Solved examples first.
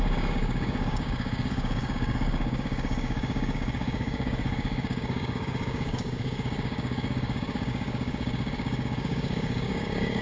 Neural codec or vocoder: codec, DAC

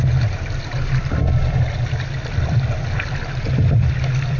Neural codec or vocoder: vocoder, BigVGAN v2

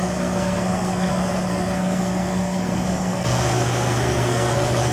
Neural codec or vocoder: codec, SNAC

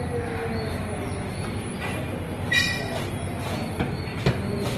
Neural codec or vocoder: none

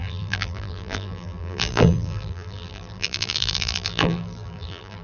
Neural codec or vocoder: vocoder, BigVGAN v2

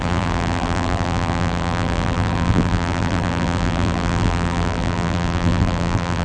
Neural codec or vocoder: vocoder, BigVGAN v2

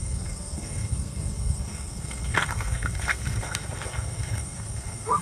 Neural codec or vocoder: codec, SNAC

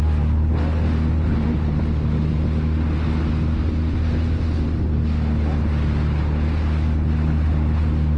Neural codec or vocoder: none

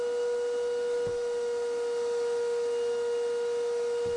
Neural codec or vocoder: none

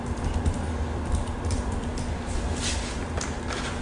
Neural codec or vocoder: none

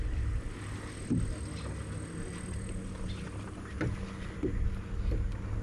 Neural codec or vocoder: none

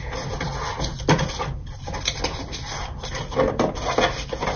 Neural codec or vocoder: none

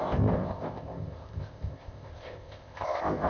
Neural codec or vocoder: codec, ZipCodec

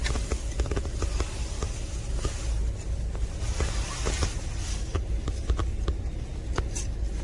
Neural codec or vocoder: none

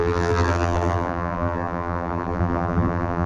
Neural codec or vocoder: vocoder, BigVGAN v2